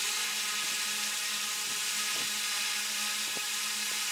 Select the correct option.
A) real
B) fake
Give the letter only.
A